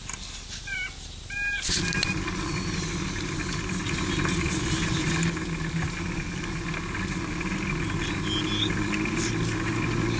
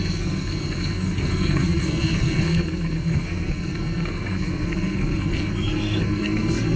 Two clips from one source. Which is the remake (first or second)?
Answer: second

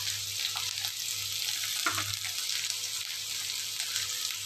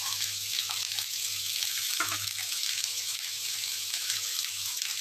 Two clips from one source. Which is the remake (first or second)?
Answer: second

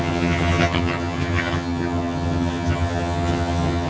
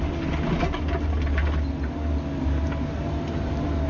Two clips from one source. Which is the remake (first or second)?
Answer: first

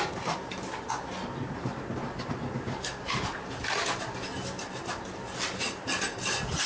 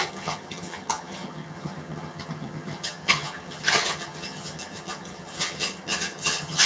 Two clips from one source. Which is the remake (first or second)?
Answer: second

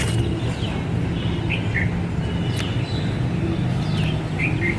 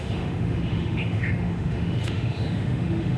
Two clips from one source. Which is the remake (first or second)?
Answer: second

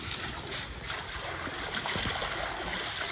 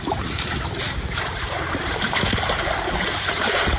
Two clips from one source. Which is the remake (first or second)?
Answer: second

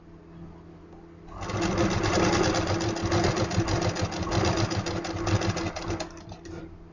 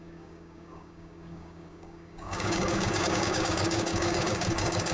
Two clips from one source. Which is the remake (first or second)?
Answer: second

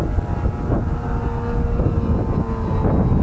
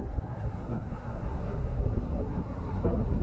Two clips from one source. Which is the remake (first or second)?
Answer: second